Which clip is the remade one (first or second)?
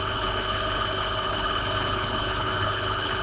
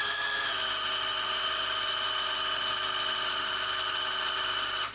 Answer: first